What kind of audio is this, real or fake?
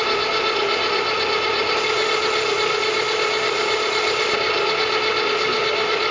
real